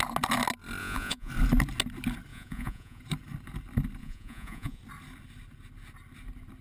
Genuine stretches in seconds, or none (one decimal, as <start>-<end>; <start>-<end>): 0.0-0.8; 1.3-2.3; 3.0-4.0; 4.8-6.6